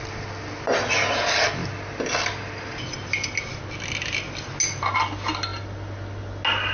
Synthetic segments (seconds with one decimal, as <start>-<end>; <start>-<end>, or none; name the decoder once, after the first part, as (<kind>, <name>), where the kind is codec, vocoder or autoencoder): none